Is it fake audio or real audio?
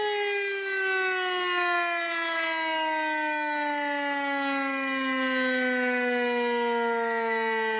real